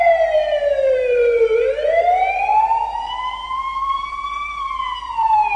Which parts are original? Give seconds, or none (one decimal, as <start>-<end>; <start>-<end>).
2.5-3.3